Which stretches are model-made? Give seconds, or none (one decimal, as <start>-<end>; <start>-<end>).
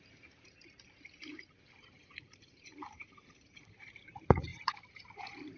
0.0-5.6